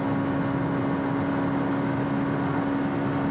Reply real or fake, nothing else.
real